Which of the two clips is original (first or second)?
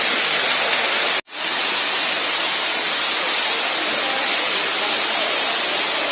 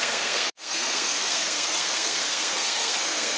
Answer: first